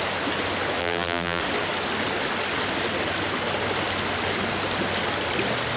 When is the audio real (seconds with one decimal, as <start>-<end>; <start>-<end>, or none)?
0.0-0.8; 1.4-5.8